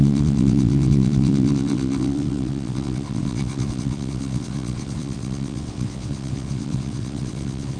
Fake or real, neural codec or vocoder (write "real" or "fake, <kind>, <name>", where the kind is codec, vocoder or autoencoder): fake, vocoder, WaveNeXt